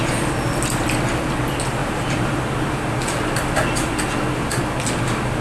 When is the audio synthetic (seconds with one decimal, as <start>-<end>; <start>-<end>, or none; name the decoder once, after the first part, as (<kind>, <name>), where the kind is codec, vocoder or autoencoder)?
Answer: none